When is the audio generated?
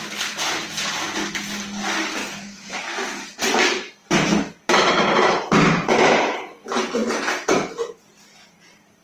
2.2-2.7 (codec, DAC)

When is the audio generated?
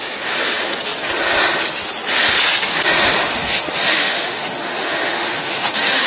3.3-6.1 (autoencoder, DAC-VAE)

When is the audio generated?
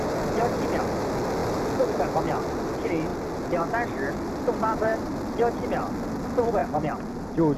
0.0-3.1 (vocoder, BigVGAN v2); 4.1-4.9; 5.9-7.6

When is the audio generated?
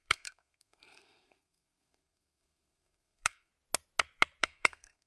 0.0-3.5 (codec, SNAC); 4.4-5.1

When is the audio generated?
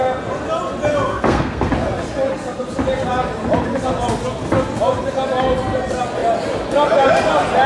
1.1-1.7 (codec, SNAC)